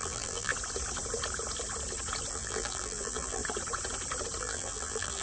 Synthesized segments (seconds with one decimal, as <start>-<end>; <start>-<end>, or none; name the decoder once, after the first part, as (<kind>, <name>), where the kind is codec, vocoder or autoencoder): 0.0-0.5 (vocoder, BigVGAN v2); 2.3-3.4; 4.4-5.2